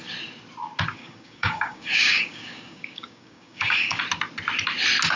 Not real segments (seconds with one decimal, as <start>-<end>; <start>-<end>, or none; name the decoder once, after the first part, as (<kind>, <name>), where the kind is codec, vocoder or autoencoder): 0.9-4.0 (codec, DAC)